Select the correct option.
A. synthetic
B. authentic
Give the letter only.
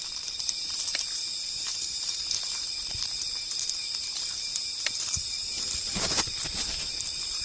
A